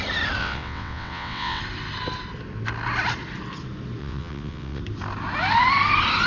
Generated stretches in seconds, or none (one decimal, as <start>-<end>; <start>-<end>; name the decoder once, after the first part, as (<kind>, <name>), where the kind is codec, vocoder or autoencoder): 0.4-1.6 (vocoder, WaveNeXt); 4.0-4.8